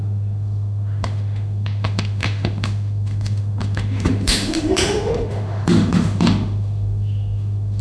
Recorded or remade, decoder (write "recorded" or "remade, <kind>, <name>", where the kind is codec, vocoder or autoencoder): remade, autoencoder, DAC-VAE